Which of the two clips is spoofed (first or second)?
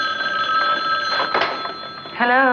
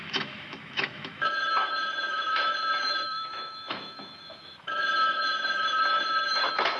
second